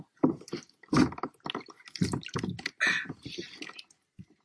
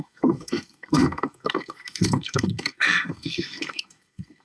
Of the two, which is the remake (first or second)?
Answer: second